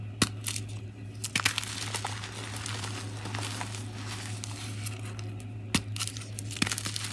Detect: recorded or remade recorded